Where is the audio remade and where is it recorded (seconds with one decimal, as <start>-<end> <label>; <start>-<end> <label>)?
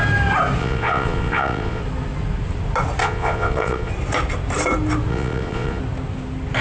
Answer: 0.0-0.6 recorded; 0.6-1.8 remade; 1.8-3.0 recorded; 3.0-3.9 remade; 3.9-5.1 recorded; 5.1-5.8 remade; 5.8-6.6 recorded